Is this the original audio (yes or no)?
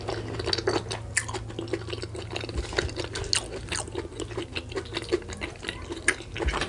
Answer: yes